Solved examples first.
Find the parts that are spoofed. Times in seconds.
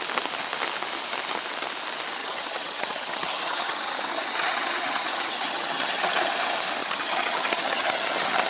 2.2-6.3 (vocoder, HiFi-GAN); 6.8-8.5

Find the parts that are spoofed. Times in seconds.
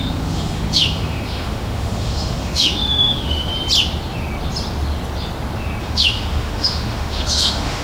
0.0-3.5 (autoencoder, DAC-VAE); 5.8-7.8